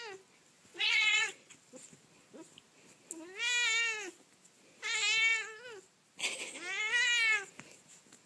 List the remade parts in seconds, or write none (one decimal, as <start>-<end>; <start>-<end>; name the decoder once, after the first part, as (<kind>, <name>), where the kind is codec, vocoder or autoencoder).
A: 0.7-1.5 (vocoder, Vocos)